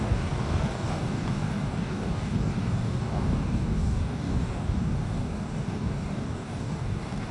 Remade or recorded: remade